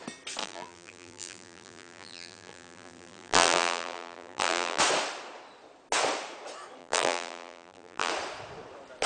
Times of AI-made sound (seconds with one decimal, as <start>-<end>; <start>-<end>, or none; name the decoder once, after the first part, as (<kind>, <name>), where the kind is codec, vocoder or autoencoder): 0.4-4.8 (vocoder, BigVGAN v2); 6.8-8.1